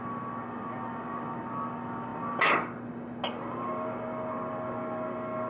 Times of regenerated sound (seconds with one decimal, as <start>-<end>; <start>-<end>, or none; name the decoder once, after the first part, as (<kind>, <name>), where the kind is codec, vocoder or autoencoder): none